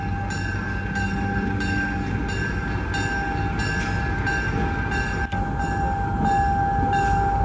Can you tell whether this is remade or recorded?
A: recorded